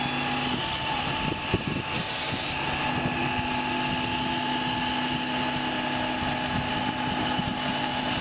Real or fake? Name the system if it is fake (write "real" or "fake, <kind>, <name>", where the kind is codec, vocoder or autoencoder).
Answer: real